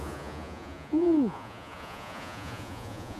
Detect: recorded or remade remade